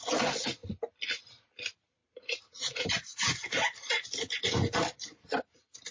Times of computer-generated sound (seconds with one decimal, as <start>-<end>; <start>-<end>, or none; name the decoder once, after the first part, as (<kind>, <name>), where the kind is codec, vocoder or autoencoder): none